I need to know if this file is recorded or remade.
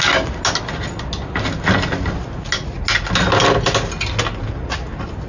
recorded